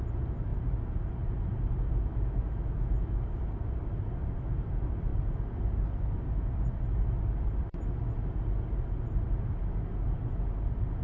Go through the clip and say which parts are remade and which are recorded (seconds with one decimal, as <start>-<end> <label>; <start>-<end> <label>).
0.0-1.9 recorded; 1.9-3.4 remade; 3.4-11.0 recorded